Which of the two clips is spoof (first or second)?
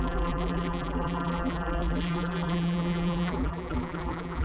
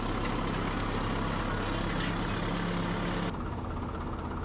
first